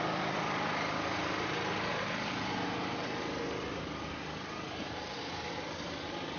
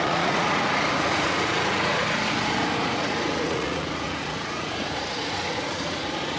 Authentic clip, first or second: first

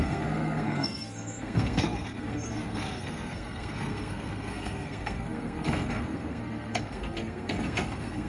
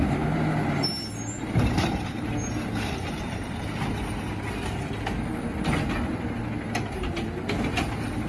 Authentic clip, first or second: second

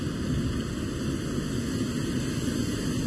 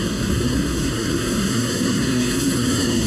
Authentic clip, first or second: first